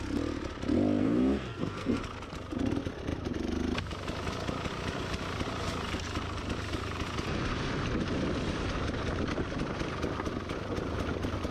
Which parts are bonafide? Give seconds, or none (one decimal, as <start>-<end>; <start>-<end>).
0.0-1.0; 2.0-11.5